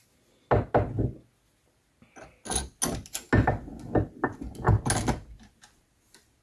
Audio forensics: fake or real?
real